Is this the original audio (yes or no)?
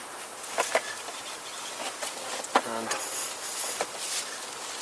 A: no